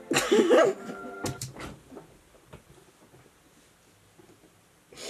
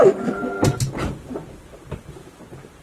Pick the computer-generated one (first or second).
second